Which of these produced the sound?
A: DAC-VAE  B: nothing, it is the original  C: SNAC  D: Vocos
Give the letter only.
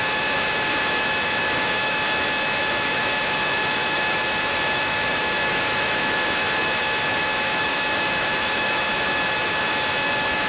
A